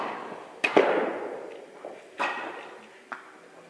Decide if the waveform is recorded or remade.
recorded